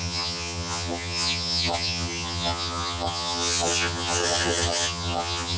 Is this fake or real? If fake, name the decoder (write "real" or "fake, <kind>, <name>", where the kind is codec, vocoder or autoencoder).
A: fake, vocoder, HiFi-GAN